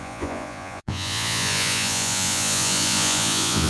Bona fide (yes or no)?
no